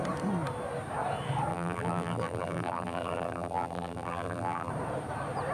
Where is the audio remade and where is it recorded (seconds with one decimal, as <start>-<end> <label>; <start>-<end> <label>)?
0.0-1.5 recorded; 1.5-4.7 remade; 4.7-5.5 recorded